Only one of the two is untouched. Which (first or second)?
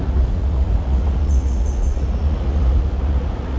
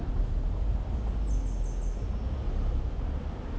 second